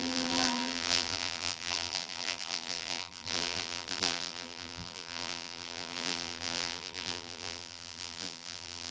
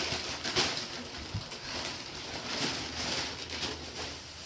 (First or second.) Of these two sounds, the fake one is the first